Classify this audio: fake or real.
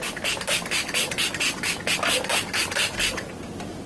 real